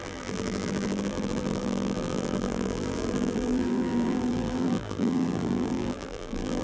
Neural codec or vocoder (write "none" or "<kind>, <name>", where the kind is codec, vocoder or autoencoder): vocoder, BigVGAN v2